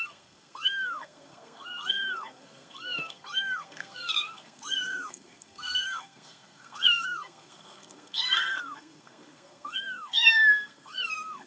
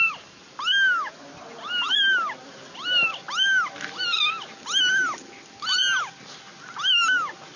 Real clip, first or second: second